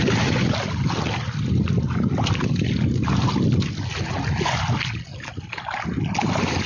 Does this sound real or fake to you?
real